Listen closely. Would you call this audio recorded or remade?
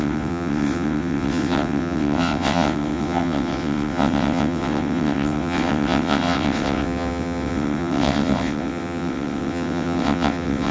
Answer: remade